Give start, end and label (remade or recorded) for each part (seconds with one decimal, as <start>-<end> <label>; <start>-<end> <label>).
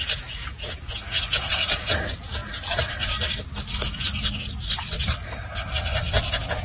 0.0-2.4 remade; 2.4-6.6 recorded